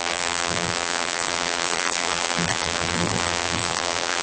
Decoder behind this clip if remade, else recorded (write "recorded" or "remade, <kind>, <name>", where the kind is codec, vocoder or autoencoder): remade, vocoder, BigVGAN v2